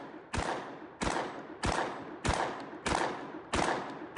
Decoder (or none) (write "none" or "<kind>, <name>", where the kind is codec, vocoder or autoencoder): none